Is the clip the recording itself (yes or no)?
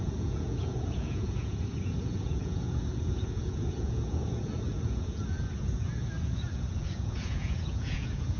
no